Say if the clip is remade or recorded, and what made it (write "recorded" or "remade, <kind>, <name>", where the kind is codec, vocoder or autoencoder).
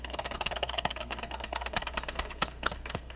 remade, codec, SNAC